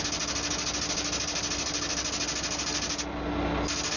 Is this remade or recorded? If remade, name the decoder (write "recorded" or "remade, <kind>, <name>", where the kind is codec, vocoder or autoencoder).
recorded